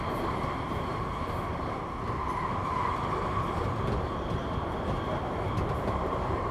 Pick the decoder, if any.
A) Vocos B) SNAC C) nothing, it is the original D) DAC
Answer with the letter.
C